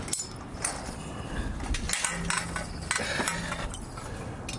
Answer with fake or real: real